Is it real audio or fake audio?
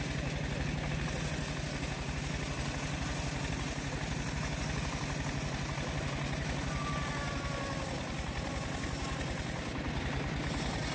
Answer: real